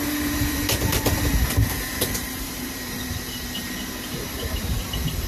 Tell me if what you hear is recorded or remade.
remade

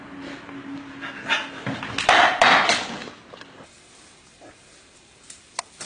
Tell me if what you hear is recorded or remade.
recorded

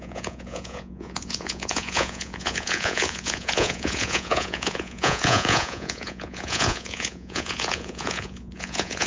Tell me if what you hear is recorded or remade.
remade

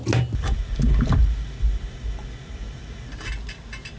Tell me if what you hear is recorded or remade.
recorded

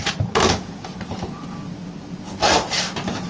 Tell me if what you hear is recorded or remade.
recorded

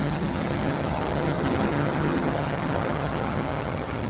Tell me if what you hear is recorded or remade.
remade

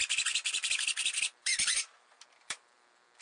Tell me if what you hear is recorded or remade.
remade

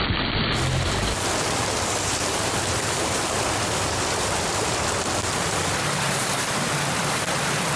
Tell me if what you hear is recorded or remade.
remade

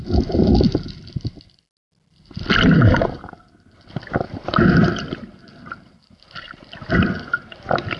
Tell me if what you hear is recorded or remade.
recorded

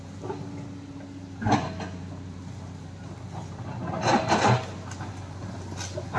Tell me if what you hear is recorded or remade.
recorded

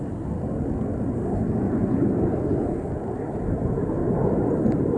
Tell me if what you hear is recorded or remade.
recorded